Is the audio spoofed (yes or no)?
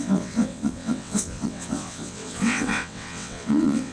yes